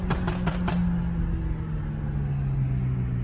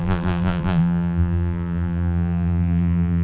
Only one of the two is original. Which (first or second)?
first